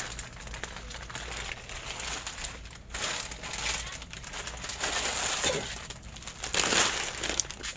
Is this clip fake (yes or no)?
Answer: no